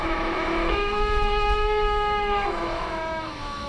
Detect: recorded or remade remade